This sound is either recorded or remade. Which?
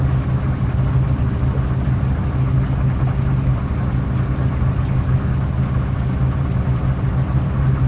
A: recorded